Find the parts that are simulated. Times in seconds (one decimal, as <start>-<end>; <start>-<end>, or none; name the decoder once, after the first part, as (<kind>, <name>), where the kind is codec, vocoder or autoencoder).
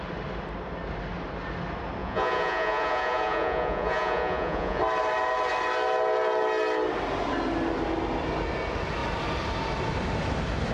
2.0-4.8 (vocoder, Vocos)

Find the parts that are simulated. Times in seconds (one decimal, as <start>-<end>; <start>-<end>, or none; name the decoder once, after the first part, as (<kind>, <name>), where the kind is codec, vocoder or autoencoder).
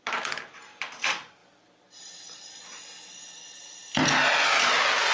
none